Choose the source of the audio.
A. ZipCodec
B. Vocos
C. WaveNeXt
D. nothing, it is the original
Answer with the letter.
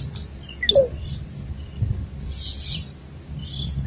D